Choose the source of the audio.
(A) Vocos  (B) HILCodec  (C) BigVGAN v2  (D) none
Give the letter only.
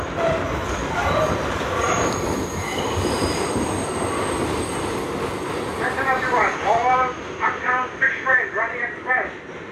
C